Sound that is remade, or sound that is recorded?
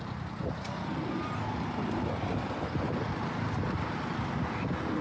recorded